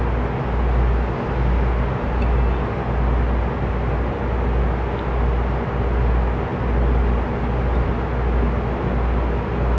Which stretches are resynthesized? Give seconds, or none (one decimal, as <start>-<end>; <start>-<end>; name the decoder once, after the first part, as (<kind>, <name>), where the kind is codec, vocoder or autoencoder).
none